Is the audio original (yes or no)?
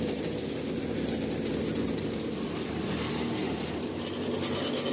yes